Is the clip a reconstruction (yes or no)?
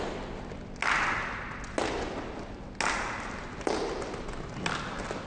no